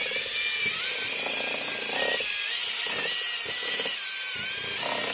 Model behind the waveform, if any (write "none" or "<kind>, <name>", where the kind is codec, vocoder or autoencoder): none